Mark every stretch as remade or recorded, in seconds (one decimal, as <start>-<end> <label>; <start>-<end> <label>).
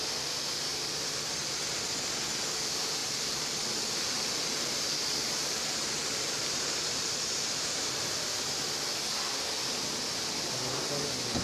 0.0-3.0 recorded; 3.0-8.1 remade; 8.1-11.4 recorded